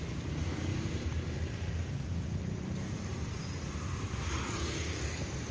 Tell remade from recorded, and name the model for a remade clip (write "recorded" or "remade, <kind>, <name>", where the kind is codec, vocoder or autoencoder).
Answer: recorded